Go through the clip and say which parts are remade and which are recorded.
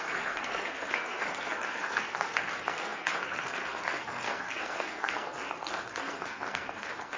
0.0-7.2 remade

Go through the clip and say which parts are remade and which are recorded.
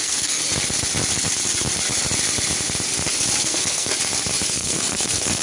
0.0-0.4 remade; 0.4-3.4 recorded; 3.4-3.9 remade; 3.9-4.5 recorded; 4.5-5.4 remade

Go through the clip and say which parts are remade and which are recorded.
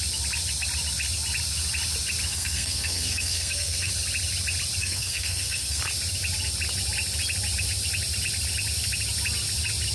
0.0-2.3 recorded; 2.3-3.9 remade; 3.9-4.8 recorded; 4.8-5.8 remade; 5.8-9.9 recorded